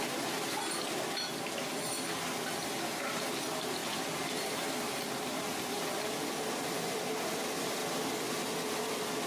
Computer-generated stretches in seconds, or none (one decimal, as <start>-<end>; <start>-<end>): none

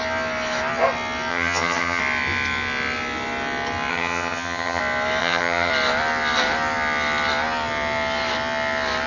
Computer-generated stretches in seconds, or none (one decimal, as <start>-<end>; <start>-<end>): 1.3-2.0; 3.9-4.8; 5.2-5.7

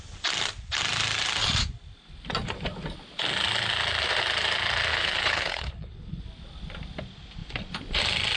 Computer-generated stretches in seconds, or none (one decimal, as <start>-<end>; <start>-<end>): 4.9-6.2

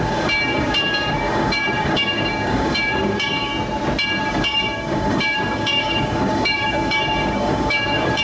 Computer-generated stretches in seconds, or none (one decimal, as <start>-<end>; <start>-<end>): 0.0-3.5; 4.2-8.2

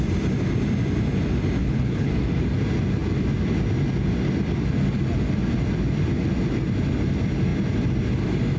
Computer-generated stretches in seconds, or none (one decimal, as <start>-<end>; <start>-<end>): 1.6-2.1

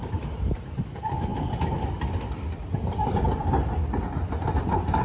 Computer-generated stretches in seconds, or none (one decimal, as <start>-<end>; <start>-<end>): 1.3-4.3

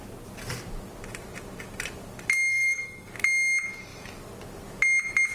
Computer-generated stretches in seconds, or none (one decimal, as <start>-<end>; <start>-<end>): 2.5-3.1